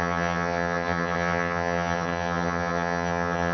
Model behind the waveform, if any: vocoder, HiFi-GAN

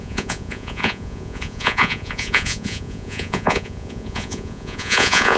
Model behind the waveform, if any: vocoder, Vocos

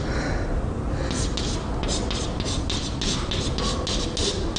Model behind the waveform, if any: none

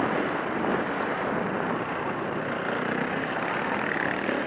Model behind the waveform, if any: none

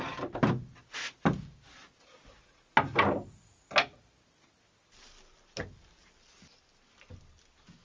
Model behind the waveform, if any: none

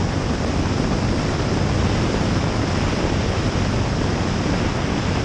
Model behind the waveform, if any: vocoder, BigVGAN v2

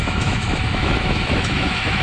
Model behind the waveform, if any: autoencoder, DAC-VAE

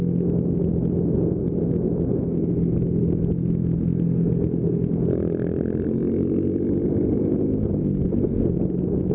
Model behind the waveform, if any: none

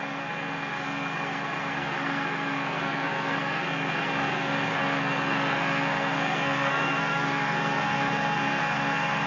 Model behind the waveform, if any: codec, SNAC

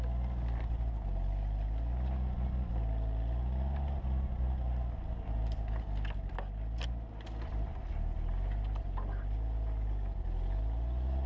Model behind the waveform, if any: none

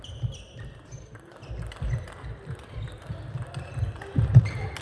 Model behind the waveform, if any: none